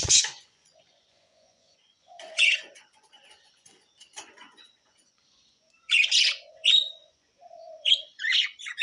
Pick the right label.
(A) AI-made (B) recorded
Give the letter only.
A